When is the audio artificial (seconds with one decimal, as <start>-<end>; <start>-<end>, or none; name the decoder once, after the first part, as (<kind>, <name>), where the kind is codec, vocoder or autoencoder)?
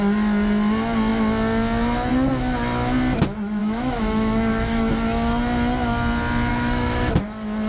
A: 3.6-4.9 (autoencoder, DAC-VAE); 6.5-7.1